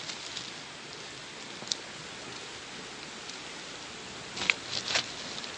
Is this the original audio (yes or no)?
yes